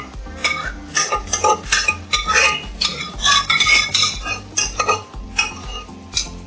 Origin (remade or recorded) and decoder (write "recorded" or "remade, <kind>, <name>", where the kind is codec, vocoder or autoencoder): recorded